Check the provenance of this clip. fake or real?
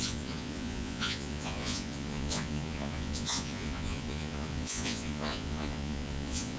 fake